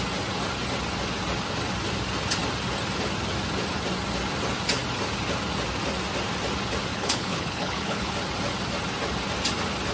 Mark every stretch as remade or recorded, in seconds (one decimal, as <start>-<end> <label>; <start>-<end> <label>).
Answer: 0.0-6.9 recorded; 6.9-8.1 remade; 8.1-9.9 recorded

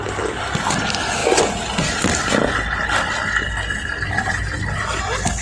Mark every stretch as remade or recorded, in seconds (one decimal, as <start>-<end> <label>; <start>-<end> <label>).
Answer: 0.0-5.4 recorded

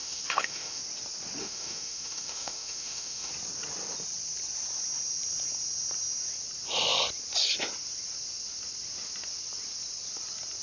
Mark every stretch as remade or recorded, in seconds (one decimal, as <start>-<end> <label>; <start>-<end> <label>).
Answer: 0.0-0.8 remade; 0.8-1.4 recorded; 1.4-3.3 remade; 3.3-10.6 recorded

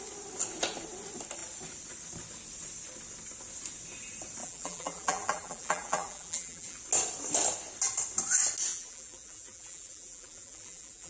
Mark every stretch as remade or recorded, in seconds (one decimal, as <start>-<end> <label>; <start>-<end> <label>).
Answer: 0.0-4.4 recorded; 4.4-6.8 remade; 6.8-8.7 recorded; 8.7-11.1 remade

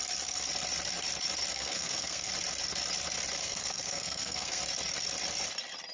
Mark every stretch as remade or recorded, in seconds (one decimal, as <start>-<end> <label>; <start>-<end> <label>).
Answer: 0.0-1.5 recorded; 1.5-2.3 remade; 2.3-3.4 recorded; 3.4-4.6 remade; 4.6-5.9 recorded

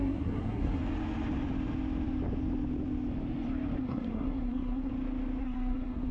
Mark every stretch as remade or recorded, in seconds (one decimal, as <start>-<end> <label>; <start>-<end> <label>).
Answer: 0.0-0.8 remade; 0.8-3.8 recorded; 3.8-4.9 remade; 4.9-5.4 recorded; 5.4-6.1 remade

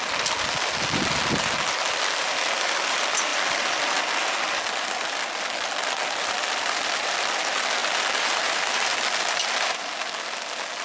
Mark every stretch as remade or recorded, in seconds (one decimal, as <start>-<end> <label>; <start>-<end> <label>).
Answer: 0.0-7.8 recorded; 7.8-9.9 remade; 9.9-10.8 recorded

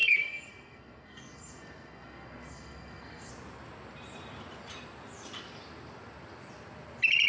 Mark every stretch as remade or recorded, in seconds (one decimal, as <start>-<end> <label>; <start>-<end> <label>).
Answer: 0.0-3.3 remade; 3.3-7.3 recorded